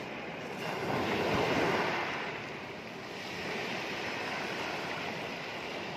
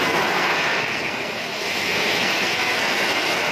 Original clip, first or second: first